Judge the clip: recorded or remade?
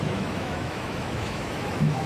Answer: remade